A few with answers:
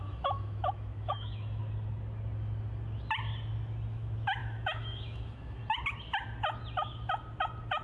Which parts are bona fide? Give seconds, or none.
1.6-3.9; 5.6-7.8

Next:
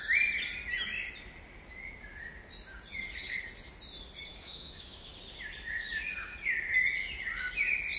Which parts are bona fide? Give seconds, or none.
0.0-4.3; 5.1-8.0

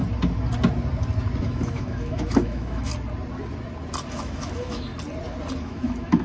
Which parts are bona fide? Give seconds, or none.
0.0-1.4; 2.9-4.1; 4.9-5.6